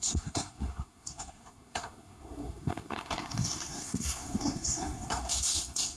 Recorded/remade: remade